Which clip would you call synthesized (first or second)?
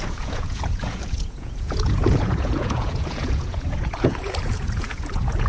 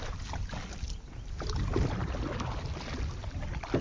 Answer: first